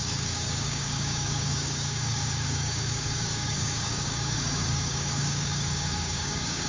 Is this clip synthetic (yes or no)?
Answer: yes